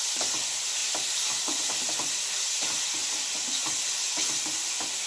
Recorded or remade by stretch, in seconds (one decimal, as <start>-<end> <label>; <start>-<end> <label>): 0.0-5.1 recorded